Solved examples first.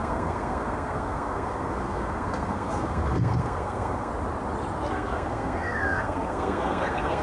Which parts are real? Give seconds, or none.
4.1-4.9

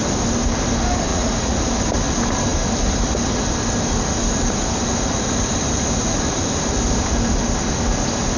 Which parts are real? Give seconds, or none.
0.0-1.1; 1.6-8.4

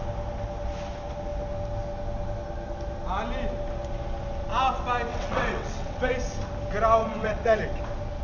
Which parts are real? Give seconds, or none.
0.0-5.1; 6.1-7.0; 7.6-8.2

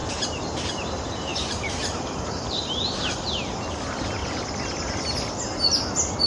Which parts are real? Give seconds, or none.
0.0-1.3; 3.3-6.3

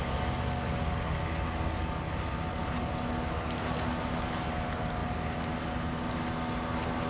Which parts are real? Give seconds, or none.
0.0-7.1

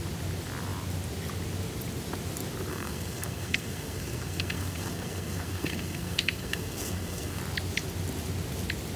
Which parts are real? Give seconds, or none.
0.0-2.7; 7.4-9.0

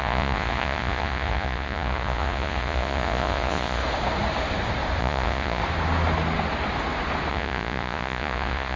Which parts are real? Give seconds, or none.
3.8-5.0; 5.6-7.3

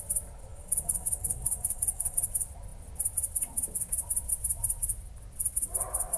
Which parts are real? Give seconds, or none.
0.0-0.5; 2.3-6.2